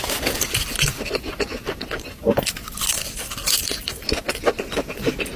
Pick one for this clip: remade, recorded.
recorded